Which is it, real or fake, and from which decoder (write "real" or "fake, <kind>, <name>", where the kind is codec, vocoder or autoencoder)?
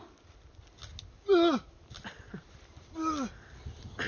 real